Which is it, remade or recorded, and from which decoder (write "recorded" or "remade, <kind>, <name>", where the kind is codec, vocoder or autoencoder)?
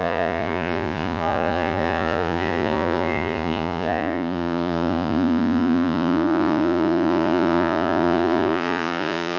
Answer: remade, vocoder, Vocos